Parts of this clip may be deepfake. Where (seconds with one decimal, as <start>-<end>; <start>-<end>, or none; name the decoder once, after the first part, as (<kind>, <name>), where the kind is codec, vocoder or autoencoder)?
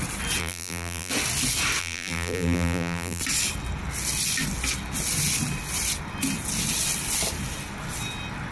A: 0.4-1.1 (vocoder, BigVGAN v2); 1.8-3.2